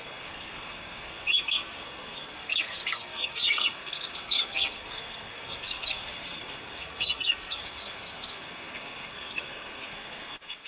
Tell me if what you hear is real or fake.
fake